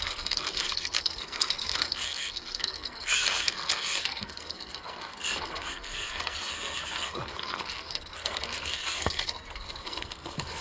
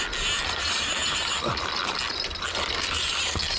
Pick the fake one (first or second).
first